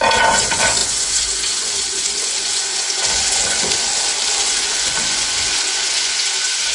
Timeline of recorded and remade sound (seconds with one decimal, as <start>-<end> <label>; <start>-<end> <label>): 0.0-3.9 remade; 3.9-4.4 recorded; 4.4-6.7 remade